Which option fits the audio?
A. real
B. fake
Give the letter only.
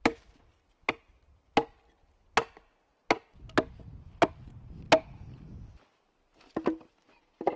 A